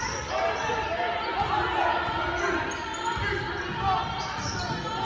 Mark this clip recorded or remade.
recorded